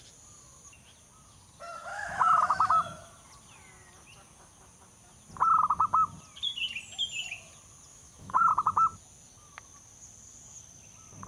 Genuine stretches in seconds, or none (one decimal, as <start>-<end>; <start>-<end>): 0.0-1.9; 2.7-7.9; 8.5-11.3